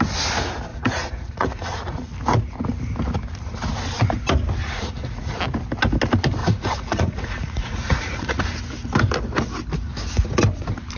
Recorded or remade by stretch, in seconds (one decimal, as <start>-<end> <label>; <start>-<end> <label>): 0.0-0.7 recorded; 0.7-2.1 remade; 2.1-4.6 recorded; 4.6-5.4 remade; 5.4-6.4 recorded; 6.4-8.4 remade; 8.4-11.0 recorded